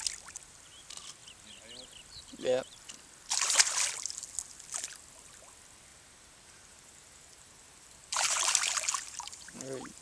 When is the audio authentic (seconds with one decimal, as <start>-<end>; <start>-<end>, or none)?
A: 0.0-5.9